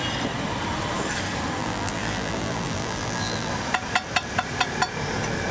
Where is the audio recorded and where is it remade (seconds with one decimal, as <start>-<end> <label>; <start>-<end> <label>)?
0.0-1.6 recorded; 1.6-3.5 remade; 3.5-5.5 recorded